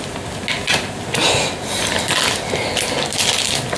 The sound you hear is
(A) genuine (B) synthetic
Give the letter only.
A